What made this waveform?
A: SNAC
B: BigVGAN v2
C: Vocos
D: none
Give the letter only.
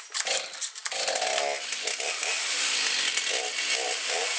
D